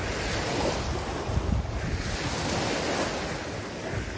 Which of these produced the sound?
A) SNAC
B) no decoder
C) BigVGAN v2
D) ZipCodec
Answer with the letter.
B